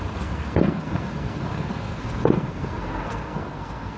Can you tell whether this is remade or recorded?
remade